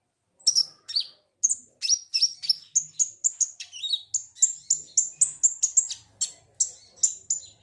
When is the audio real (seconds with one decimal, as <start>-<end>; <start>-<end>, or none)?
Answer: 0.0-7.6